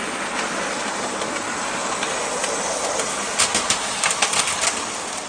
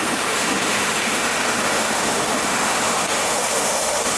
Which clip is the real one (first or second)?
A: first